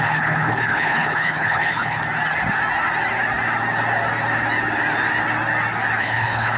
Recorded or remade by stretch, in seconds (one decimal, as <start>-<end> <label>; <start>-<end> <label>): 0.0-2.0 remade; 2.0-6.0 recorded; 6.0-6.6 remade